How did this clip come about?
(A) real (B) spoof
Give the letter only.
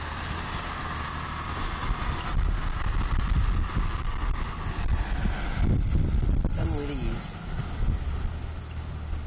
A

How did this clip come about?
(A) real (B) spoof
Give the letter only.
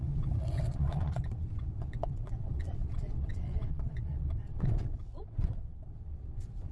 B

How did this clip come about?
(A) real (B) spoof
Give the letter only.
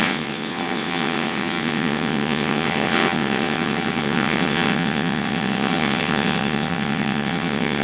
B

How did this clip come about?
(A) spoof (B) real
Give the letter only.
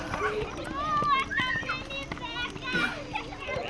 B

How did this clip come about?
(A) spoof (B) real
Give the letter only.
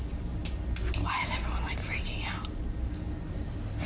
B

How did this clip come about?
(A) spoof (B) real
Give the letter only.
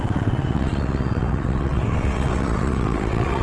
A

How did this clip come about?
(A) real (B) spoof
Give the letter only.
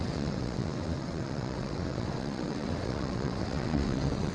B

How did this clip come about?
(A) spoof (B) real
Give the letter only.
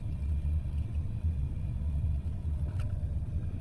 A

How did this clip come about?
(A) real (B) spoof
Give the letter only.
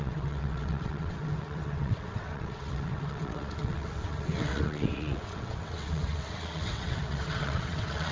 B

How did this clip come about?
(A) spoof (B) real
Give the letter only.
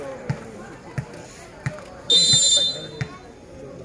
B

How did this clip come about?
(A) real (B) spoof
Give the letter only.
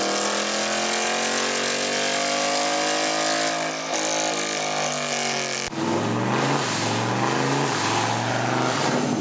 A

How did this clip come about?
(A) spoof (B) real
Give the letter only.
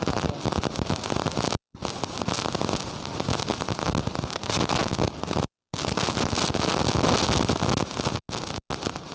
B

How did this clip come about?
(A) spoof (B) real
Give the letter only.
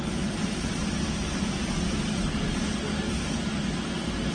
B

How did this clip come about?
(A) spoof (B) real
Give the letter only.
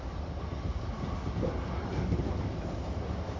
B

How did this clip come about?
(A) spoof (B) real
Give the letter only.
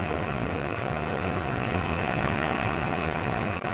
A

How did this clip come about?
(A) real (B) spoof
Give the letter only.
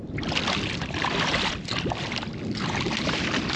A